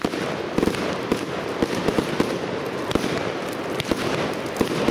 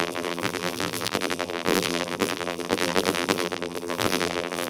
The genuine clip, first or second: first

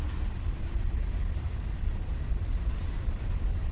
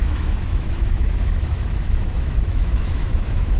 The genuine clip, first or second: first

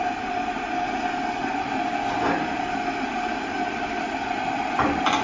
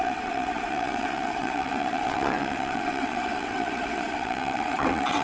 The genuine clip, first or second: first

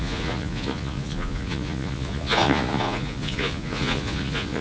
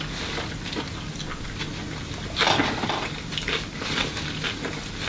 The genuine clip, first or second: second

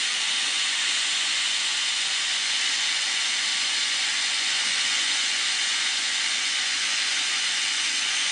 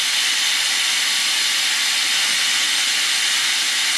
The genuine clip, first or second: second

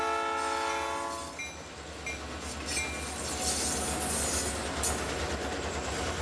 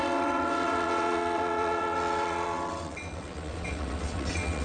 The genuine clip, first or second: first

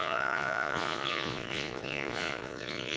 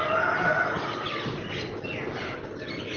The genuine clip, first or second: second